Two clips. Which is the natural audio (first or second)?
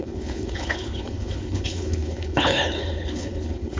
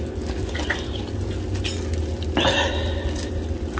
second